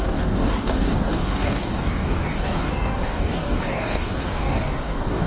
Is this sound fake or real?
fake